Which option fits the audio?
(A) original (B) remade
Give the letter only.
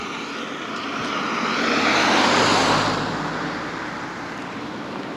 A